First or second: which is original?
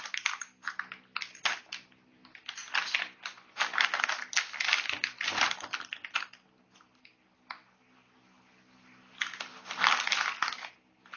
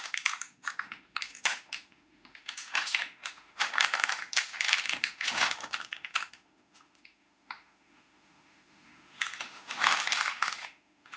first